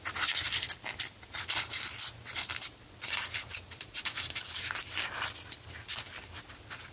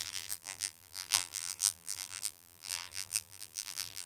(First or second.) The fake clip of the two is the second